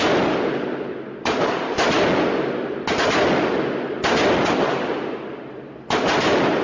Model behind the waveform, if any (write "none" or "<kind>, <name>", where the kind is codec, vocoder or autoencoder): none